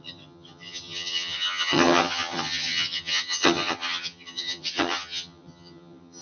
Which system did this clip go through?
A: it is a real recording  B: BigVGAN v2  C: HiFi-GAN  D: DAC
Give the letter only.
C